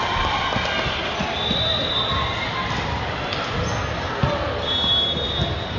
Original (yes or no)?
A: yes